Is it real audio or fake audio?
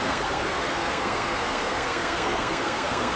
fake